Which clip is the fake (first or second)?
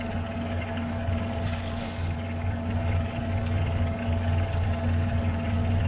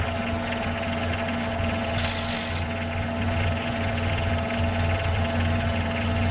first